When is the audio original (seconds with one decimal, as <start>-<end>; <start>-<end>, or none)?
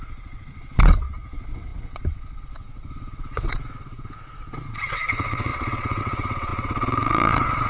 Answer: none